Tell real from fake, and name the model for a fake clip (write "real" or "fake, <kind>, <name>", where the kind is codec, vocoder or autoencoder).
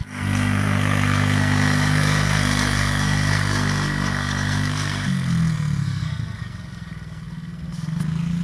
fake, codec, SNAC